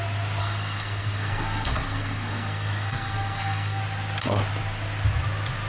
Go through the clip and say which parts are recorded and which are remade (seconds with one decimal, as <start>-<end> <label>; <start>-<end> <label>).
0.0-0.4 recorded; 0.4-3.8 remade; 3.8-5.7 recorded